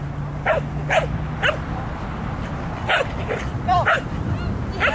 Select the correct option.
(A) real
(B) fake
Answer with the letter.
A